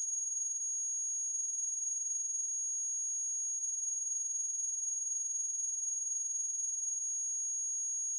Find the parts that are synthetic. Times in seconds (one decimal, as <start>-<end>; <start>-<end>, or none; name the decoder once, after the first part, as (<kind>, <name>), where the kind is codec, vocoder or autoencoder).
0.0-0.6 (autoencoder, DAC-VAE); 1.3-2.5; 3.6-7.0